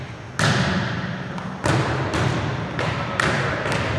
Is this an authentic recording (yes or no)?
yes